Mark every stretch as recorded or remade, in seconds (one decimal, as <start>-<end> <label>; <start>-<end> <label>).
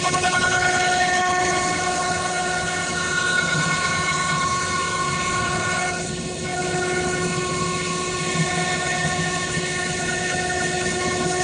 0.0-11.4 remade